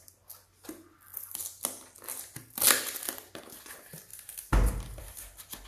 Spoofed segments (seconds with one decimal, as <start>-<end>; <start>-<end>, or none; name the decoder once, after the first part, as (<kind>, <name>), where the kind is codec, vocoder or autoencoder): none